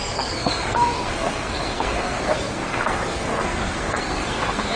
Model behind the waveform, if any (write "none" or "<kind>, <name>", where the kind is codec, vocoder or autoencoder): codec, SNAC